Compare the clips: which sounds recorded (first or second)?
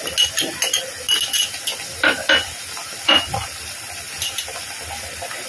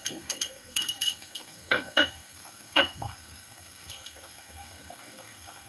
first